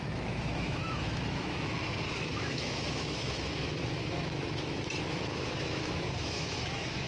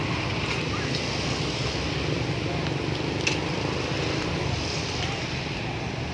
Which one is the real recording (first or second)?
second